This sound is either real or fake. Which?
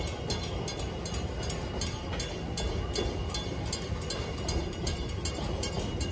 real